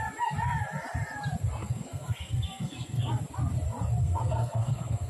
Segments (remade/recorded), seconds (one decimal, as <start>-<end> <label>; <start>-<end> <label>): 0.0-1.6 recorded; 1.6-3.2 remade; 3.2-4.0 recorded; 4.0-5.1 remade